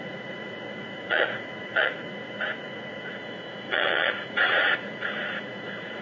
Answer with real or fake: fake